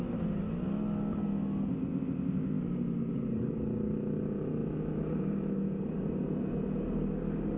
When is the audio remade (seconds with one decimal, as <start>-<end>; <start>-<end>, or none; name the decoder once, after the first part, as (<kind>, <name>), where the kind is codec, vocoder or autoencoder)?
1.7-2.6 (codec, ZipCodec)